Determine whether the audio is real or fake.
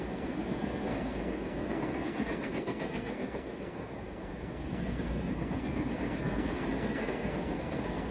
fake